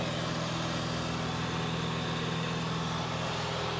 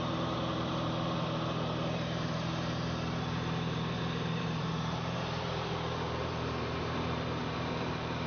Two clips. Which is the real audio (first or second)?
first